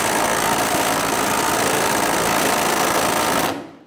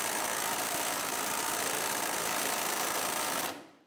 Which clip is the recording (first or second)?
first